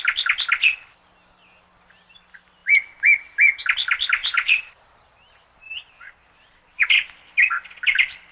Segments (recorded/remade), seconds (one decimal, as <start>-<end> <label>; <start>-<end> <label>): 0.0-4.2 recorded; 4.2-6.9 remade; 6.9-8.3 recorded